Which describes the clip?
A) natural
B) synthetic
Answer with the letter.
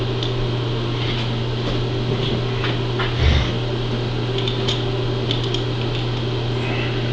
A